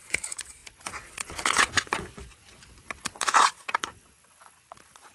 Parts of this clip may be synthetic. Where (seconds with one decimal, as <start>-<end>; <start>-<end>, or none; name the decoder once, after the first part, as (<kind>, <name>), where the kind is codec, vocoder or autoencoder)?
0.0-5.1 (vocoder, Vocos)